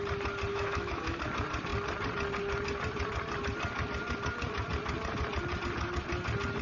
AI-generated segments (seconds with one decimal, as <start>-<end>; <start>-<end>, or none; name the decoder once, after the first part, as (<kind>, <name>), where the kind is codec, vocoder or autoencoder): 0.5-1.2 (autoencoder, DAC-VAE)